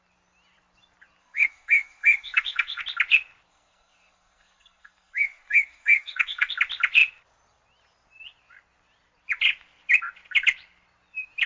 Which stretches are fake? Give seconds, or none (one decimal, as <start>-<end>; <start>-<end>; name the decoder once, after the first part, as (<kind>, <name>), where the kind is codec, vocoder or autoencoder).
1.2-2.8 (codec, SNAC); 3.5-6.5